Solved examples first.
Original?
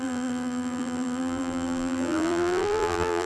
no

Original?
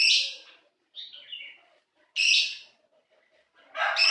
yes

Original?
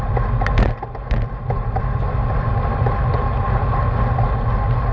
yes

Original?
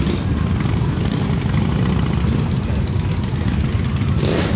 yes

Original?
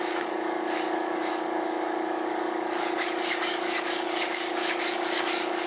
no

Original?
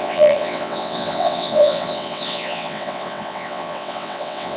no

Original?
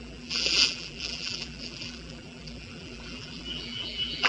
no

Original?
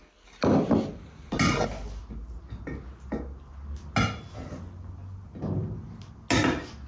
yes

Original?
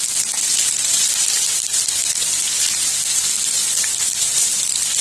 yes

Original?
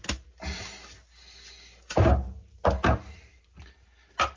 yes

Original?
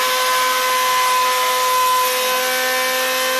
yes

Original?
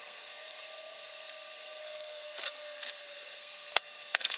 no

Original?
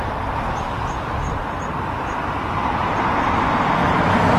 yes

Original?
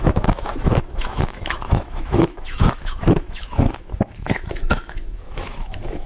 no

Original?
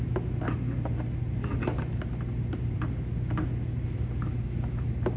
yes